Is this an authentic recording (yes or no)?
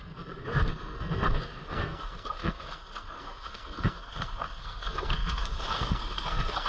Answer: no